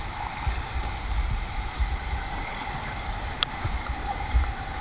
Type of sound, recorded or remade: recorded